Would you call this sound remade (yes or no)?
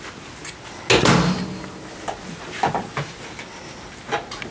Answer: no